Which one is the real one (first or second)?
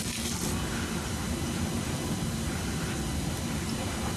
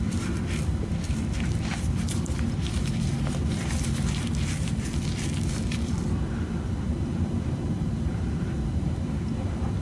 first